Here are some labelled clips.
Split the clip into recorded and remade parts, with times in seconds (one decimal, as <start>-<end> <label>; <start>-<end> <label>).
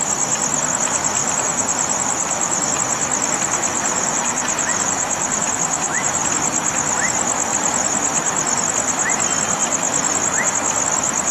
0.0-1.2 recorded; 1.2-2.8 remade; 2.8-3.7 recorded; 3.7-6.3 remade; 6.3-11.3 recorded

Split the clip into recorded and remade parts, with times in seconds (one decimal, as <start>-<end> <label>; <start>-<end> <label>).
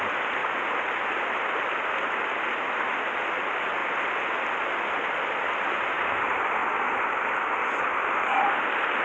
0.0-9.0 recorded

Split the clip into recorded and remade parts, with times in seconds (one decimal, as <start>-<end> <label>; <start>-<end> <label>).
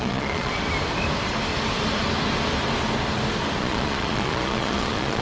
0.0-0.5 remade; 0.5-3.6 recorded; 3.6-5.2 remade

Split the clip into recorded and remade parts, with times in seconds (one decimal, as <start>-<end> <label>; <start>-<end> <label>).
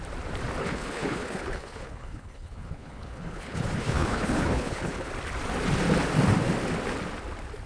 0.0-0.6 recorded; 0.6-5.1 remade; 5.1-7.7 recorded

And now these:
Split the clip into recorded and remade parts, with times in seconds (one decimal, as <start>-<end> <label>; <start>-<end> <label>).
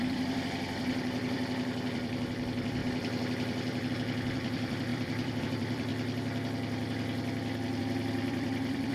0.0-5.9 remade; 5.9-7.8 recorded; 7.8-8.9 remade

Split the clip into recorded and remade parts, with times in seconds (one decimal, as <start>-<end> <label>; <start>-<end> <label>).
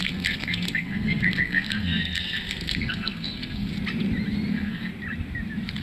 0.0-3.7 remade; 3.7-4.5 recorded; 4.5-4.9 remade; 4.9-5.8 recorded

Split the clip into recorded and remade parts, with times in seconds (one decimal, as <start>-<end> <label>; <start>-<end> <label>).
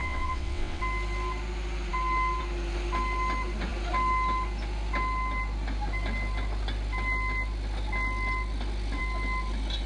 0.0-0.8 remade; 0.8-9.9 recorded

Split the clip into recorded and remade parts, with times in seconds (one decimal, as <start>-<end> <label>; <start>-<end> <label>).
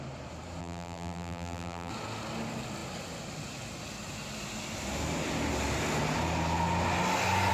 0.0-0.6 recorded; 0.6-1.9 remade; 1.9-7.5 recorded